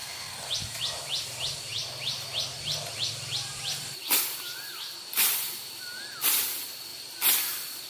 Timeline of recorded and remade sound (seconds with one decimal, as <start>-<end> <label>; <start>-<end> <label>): 0.0-0.5 remade; 0.5-7.9 recorded